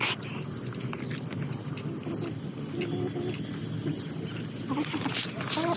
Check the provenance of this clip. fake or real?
real